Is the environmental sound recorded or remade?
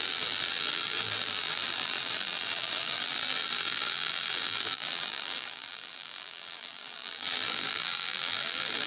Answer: remade